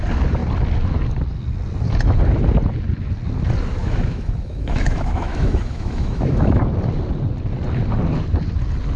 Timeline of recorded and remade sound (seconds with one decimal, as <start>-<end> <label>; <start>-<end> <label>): 0.0-3.8 recorded; 3.8-6.6 remade; 6.6-9.0 recorded